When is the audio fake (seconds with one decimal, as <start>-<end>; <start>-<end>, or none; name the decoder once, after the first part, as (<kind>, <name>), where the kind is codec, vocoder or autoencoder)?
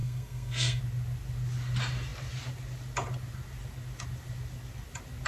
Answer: 0.0-0.8 (codec, SNAC)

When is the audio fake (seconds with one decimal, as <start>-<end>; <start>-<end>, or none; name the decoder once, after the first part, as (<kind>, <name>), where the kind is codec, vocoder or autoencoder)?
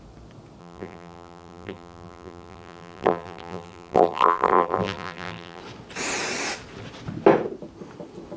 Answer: 0.6-5.6 (vocoder, BigVGAN v2)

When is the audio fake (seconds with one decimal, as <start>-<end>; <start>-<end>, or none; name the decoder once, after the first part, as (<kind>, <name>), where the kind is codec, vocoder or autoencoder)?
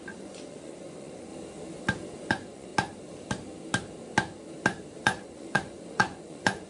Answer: 0.0-1.3 (vocoder, Vocos); 2.3-2.7; 5.0-6.7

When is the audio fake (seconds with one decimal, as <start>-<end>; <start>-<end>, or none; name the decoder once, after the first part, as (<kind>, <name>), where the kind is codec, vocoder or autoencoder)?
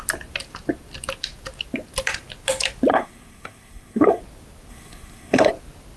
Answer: 2.9-4.2 (codec, SNAC); 4.7-5.5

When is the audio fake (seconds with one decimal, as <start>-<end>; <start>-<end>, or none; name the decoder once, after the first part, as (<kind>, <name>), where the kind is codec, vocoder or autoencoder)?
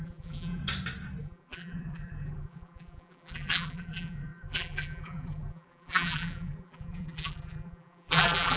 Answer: 0.0-0.6 (vocoder, BigVGAN v2); 1.2-8.6